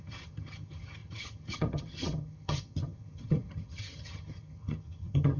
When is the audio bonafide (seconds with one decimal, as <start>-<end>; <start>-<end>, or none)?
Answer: none